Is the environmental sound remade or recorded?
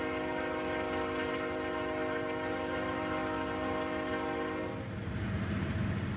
recorded